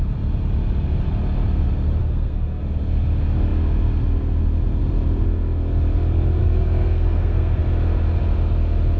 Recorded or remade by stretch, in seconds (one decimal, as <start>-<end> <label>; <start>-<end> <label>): 0.0-2.0 recorded; 2.0-2.6 remade; 2.6-6.4 recorded; 6.4-7.6 remade; 7.6-9.0 recorded